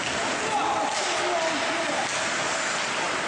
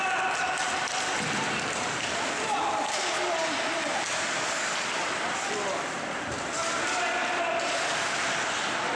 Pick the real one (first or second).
first